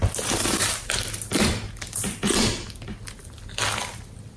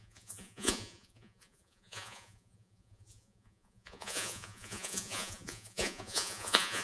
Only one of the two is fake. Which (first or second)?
second